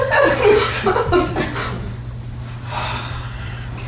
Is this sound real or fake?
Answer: real